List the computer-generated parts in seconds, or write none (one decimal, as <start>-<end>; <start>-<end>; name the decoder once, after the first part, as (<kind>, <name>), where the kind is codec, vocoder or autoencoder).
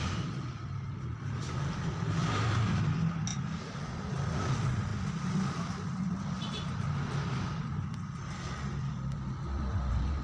2.2-2.7 (vocoder, BigVGAN v2); 3.3-4.1